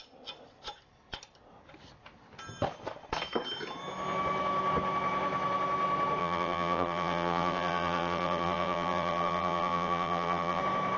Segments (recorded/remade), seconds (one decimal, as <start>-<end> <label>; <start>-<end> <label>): 0.0-6.2 recorded; 6.2-10.6 remade; 10.6-11.0 recorded